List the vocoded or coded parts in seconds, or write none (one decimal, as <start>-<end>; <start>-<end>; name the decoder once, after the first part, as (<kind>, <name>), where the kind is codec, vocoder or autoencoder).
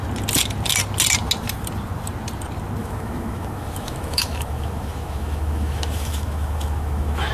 2.8-7.3 (autoencoder, DAC-VAE)